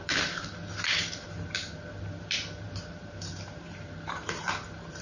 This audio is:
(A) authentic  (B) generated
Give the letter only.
B